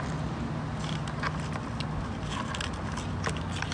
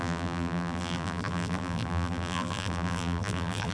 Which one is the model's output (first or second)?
second